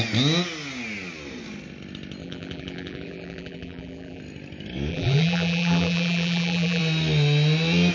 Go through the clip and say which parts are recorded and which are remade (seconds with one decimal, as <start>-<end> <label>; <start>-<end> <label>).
0.0-2.2 recorded; 2.2-4.2 remade; 4.2-4.9 recorded; 4.9-6.8 remade; 6.8-7.9 recorded